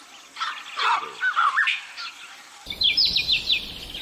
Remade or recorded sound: recorded